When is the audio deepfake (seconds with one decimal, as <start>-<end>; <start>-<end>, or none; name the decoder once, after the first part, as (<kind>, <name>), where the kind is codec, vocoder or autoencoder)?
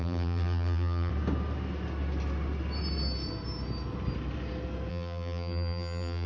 0.0-1.1 (vocoder, BigVGAN v2); 4.9-6.3